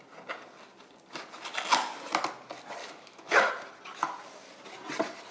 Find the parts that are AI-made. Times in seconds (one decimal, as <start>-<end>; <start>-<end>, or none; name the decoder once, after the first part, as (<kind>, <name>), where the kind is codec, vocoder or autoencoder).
2.8-3.5 (autoencoder, DAC-VAE)